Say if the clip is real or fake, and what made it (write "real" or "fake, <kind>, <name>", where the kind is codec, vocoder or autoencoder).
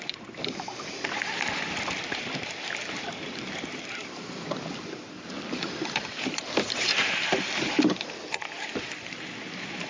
fake, vocoder, BigVGAN v2